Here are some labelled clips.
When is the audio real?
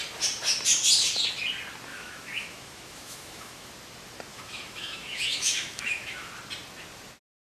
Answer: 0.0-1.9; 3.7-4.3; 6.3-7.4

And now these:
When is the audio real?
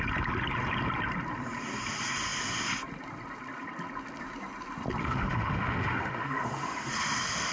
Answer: 0.0-5.0; 6.9-7.5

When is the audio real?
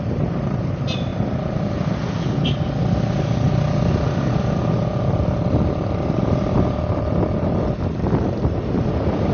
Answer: 0.0-9.3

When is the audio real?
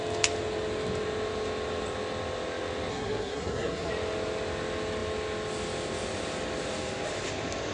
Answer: 0.0-2.9; 3.9-7.7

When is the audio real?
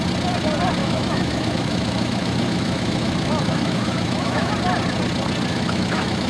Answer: 0.0-0.8; 4.5-5.5